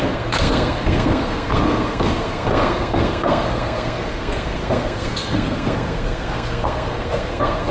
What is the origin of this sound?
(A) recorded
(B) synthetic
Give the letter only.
B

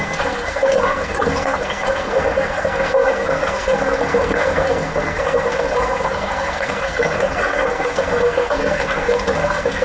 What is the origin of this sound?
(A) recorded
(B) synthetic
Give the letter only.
B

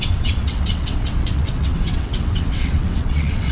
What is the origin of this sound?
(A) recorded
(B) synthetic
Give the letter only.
B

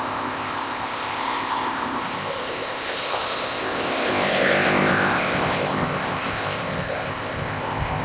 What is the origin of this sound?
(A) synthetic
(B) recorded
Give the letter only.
A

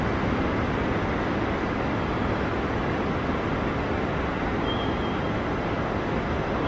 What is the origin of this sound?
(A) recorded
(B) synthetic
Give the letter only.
A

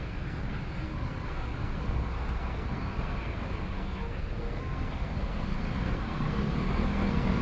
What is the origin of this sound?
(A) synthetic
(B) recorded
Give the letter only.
A